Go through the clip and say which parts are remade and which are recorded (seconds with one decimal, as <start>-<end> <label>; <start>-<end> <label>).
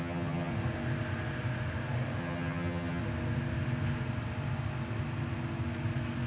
0.0-0.5 remade; 0.5-2.2 recorded; 2.2-3.0 remade; 3.0-6.3 recorded